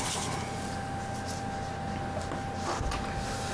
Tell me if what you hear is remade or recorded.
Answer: recorded